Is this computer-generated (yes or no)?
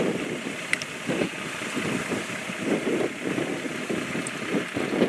no